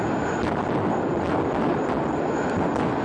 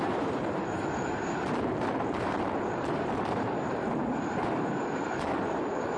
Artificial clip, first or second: second